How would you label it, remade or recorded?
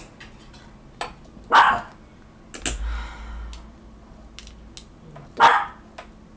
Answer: recorded